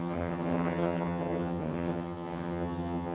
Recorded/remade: remade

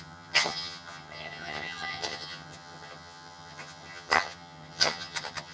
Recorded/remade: remade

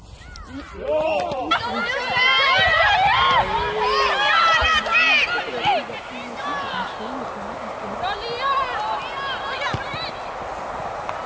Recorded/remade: recorded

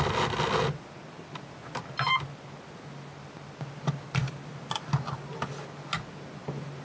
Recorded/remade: recorded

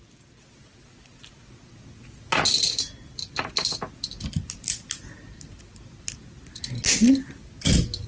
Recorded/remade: recorded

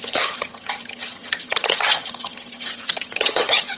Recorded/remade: remade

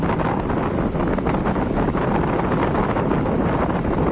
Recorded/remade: recorded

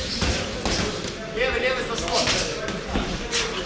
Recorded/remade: recorded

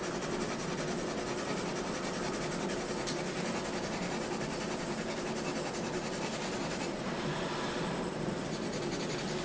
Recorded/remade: recorded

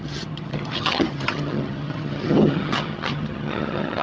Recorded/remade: remade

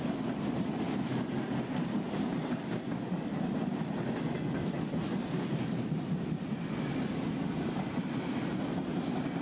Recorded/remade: recorded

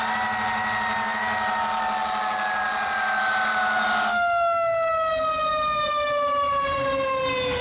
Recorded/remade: recorded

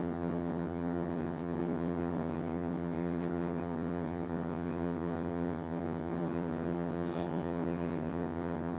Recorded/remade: remade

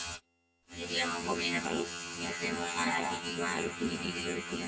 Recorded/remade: remade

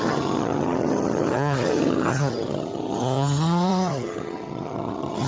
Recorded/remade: remade